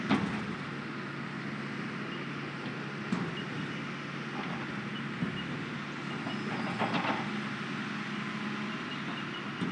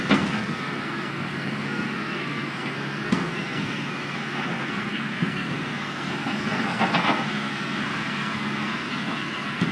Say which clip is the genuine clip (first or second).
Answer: first